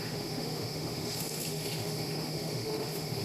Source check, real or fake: fake